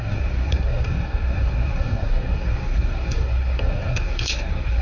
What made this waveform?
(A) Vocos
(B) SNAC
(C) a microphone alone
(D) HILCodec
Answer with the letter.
B